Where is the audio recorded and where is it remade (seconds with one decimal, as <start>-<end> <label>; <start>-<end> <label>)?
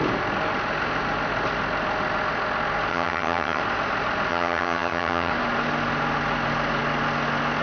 0.0-2.9 recorded; 2.9-3.6 remade; 3.6-4.3 recorded; 4.3-5.3 remade; 5.3-7.6 recorded